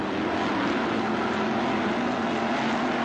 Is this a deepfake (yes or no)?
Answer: no